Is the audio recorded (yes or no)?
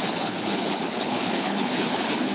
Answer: no